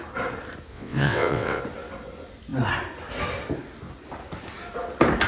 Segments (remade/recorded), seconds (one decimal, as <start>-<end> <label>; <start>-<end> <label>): 0.0-0.7 recorded; 0.7-1.6 remade; 1.6-5.3 recorded

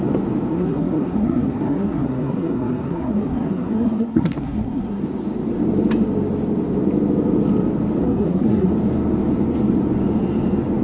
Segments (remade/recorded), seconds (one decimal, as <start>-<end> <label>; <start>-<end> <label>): 0.0-0.5 recorded; 0.5-5.0 remade; 5.0-8.0 recorded; 8.0-8.7 remade; 8.7-10.8 recorded

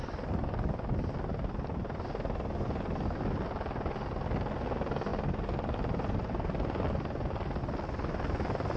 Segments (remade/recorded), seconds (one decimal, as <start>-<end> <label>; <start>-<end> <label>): 0.0-8.8 recorded

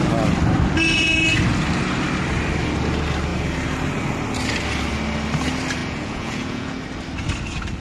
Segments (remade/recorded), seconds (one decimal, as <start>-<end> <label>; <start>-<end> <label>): 0.0-5.8 recorded; 5.8-6.8 remade; 6.8-7.8 recorded

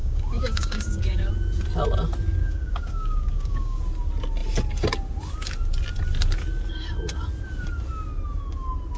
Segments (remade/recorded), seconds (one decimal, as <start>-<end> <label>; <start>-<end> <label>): 0.0-1.3 remade; 1.3-2.4 recorded; 2.4-3.8 remade; 3.8-9.0 recorded

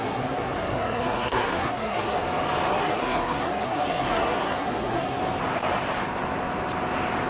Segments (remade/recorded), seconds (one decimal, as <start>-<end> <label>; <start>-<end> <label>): 0.0-2.2 remade; 2.2-2.7 recorded; 2.7-5.2 remade; 5.2-7.3 recorded

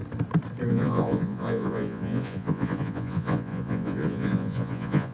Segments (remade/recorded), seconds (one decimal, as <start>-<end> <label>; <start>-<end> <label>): 0.0-0.7 recorded; 0.7-5.1 remade

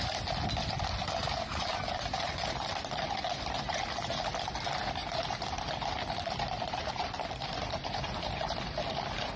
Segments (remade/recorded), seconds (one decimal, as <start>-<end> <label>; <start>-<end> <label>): 0.0-9.4 recorded